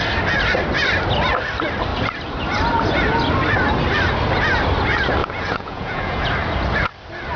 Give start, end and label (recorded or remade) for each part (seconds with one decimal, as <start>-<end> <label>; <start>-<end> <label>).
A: 0.0-5.2 recorded; 5.2-6.3 remade; 6.3-7.4 recorded